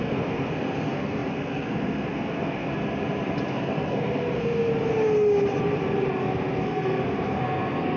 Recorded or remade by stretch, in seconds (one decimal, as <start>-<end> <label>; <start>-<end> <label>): 0.0-2.7 remade; 2.7-3.5 recorded; 3.5-4.7 remade; 4.7-6.1 recorded; 6.1-8.0 remade